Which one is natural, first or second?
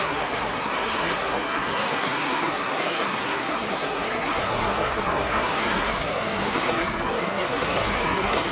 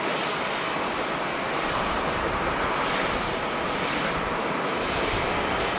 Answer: second